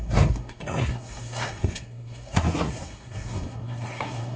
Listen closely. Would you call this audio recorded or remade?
remade